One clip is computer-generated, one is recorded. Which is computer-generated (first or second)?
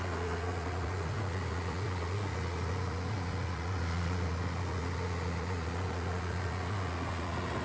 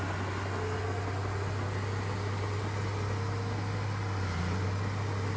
first